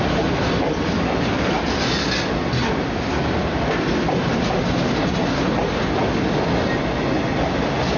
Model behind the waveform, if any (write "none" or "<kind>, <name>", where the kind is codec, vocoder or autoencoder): none